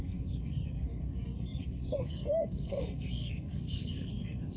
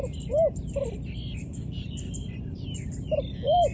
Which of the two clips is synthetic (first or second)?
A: first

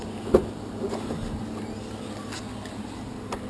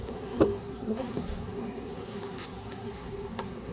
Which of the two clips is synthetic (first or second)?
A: second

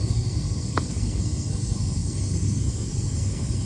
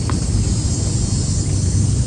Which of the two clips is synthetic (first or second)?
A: first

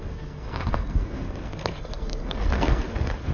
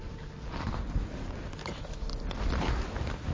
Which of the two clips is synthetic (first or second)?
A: first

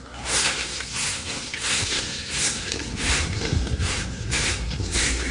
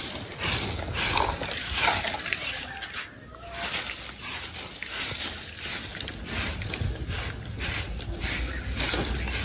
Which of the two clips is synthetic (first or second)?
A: first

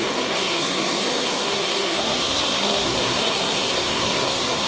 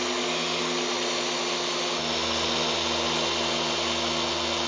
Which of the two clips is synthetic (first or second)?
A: first